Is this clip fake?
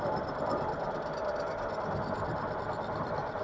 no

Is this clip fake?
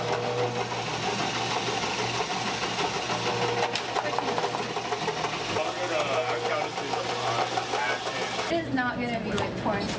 no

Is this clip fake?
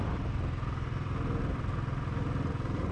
no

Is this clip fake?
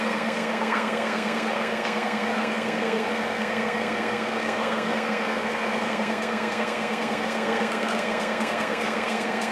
yes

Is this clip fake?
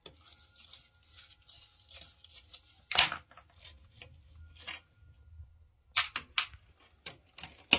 no